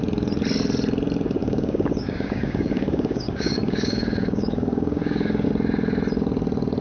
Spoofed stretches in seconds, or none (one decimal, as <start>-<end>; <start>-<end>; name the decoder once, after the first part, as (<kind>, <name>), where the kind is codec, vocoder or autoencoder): 1.4-5.5 (codec, DAC)